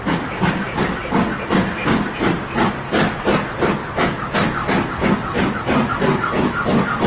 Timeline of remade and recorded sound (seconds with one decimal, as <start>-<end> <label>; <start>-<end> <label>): 0.0-7.1 recorded